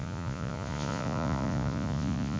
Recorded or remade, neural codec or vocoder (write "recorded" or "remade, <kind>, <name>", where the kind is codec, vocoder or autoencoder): remade, vocoder, Vocos